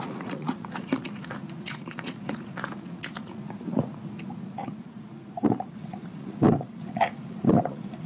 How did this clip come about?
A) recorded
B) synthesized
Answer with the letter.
B